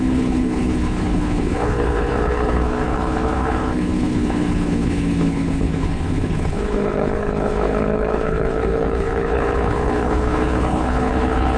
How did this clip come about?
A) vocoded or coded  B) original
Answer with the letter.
A